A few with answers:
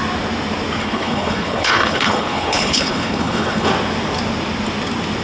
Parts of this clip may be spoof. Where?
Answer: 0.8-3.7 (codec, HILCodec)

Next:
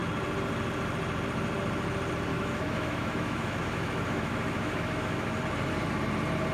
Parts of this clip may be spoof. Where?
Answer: 2.3-5.4 (autoencoder, DAC-VAE)